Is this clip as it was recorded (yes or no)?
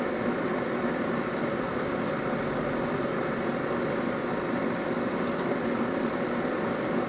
yes